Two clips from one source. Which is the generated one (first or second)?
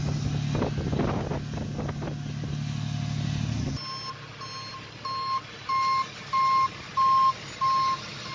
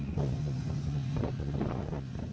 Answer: second